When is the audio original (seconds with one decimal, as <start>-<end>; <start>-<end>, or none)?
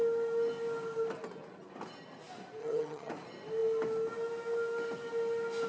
0.0-2.6; 3.1-5.7